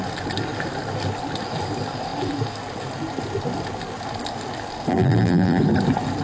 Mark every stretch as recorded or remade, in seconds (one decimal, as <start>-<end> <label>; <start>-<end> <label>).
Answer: 0.0-4.9 recorded; 4.9-5.6 remade; 5.6-6.2 recorded